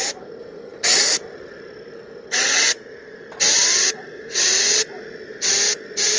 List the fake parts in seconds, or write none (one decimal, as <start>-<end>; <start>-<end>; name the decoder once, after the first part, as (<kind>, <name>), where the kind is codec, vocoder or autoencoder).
none